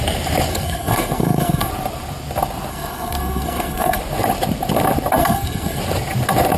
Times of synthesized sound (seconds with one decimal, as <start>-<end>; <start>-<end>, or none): 0.5-1.7; 2.7-4.0; 5.2-5.8